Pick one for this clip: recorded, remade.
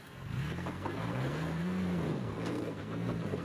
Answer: remade